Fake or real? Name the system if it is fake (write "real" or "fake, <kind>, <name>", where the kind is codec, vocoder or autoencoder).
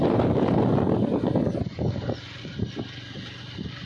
real